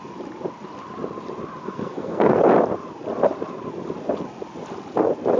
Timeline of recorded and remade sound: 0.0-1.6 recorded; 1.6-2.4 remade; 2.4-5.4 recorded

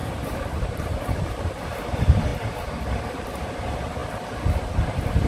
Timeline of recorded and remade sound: 0.0-2.3 remade; 2.3-2.9 recorded; 2.9-4.0 remade; 4.0-4.6 recorded; 4.6-5.3 remade

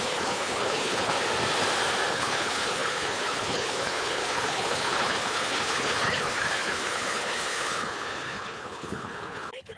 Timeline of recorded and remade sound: 0.0-1.1 remade; 1.1-2.1 recorded; 2.1-9.8 remade

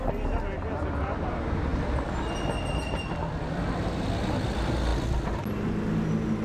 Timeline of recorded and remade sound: 0.0-6.4 recorded

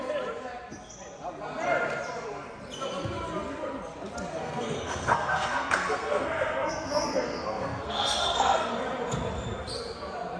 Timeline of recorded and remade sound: 0.0-4.3 recorded; 4.3-8.7 remade; 8.7-10.4 recorded

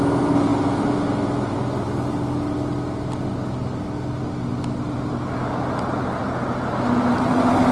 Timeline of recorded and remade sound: 0.0-7.7 recorded

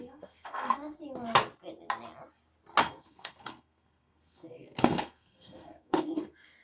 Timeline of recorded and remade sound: 0.0-1.0 remade; 1.0-2.8 recorded; 2.8-6.6 remade